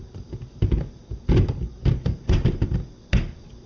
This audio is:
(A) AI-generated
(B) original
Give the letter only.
B